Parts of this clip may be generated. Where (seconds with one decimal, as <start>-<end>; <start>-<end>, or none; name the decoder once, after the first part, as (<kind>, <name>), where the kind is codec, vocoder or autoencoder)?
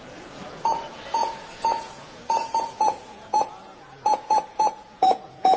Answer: 0.0-5.6 (vocoder, Vocos)